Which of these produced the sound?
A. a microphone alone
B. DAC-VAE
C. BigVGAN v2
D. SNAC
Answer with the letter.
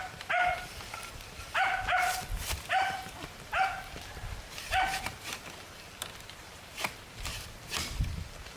C